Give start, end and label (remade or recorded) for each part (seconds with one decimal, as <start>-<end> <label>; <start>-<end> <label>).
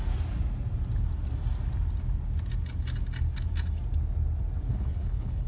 0.0-4.7 recorded; 4.7-5.5 remade